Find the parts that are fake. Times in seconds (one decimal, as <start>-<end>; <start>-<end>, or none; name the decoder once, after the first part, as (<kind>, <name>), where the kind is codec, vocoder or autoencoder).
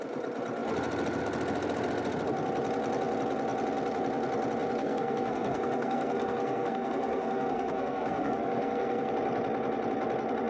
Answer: 4.8-9.1 (codec, SNAC)